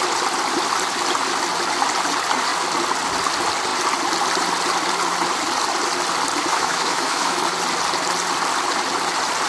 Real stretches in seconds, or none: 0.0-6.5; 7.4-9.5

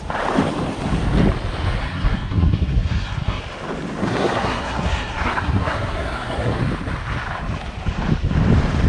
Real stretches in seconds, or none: 0.0-1.8; 3.4-4.0; 6.6-8.9

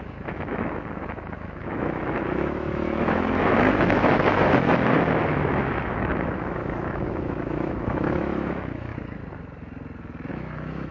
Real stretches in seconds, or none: 8.9-10.3

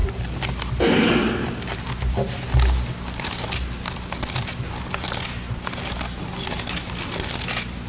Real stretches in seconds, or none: 0.0-7.9

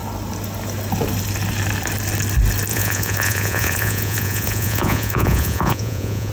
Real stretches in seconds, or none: 0.0-2.7

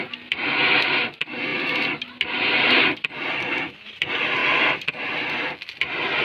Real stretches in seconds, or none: 0.0-6.2

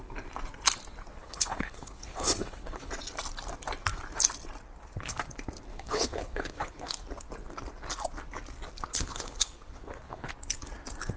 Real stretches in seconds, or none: 0.0-1.2; 2.9-5.7; 6.9-8.9; 10.3-11.2